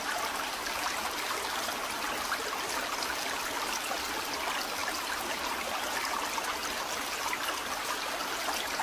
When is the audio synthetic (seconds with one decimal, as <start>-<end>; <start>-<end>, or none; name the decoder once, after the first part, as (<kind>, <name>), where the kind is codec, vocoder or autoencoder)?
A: none